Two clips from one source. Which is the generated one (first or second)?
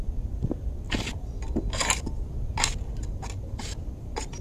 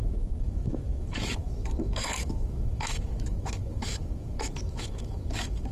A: second